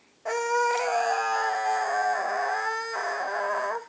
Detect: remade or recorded recorded